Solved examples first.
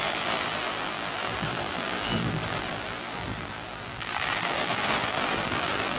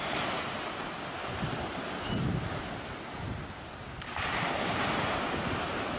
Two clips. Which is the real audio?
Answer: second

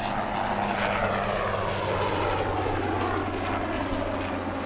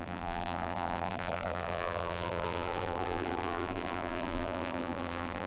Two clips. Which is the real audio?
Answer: first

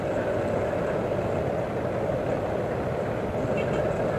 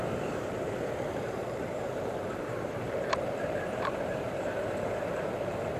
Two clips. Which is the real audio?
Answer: first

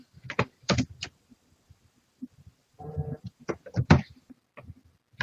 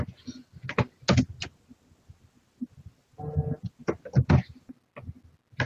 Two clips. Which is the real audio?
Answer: second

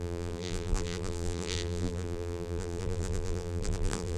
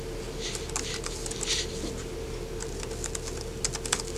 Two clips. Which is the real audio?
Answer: second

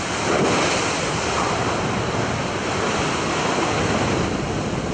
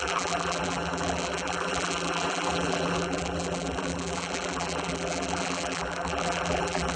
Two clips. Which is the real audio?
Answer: first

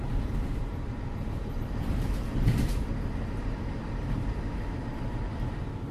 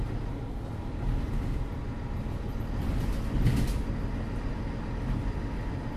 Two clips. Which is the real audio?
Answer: second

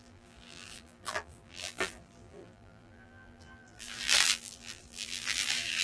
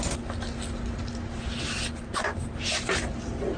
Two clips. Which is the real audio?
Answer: second